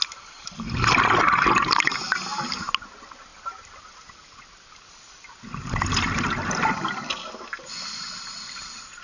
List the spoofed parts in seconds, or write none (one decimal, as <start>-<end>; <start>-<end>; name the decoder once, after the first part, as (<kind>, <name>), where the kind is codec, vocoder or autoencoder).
none